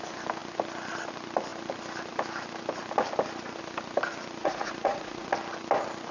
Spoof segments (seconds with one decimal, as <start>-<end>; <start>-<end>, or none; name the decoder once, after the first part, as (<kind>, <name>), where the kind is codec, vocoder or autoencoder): 4.4-5.3 (vocoder, Vocos)